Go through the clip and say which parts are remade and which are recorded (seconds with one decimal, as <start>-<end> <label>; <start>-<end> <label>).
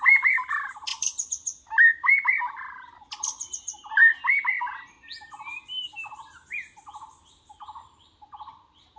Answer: 0.0-9.0 recorded